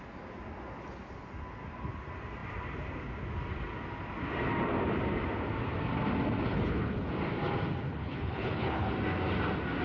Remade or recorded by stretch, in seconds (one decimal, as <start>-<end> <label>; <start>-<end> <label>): 0.0-6.5 recorded; 6.5-7.1 remade; 7.1-7.9 recorded; 7.9-8.9 remade; 8.9-9.8 recorded